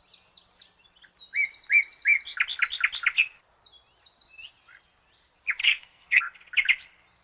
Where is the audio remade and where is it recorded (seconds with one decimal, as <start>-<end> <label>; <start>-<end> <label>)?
0.0-5.6 recorded; 5.6-6.2 remade; 6.2-7.2 recorded